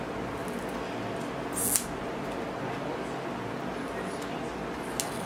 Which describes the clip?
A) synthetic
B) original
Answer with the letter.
B